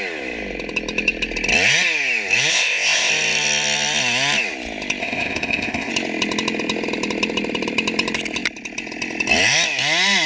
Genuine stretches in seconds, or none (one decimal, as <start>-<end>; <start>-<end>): 0.0-2.5; 3.1-5.0; 5.9-10.3